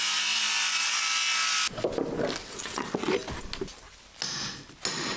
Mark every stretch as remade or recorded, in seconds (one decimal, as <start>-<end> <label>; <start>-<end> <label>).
0.0-2.4 recorded; 2.4-3.1 remade; 3.1-5.2 recorded